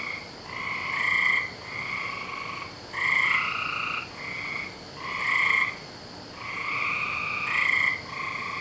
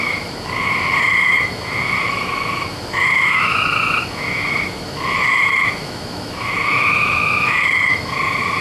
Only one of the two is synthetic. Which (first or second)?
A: second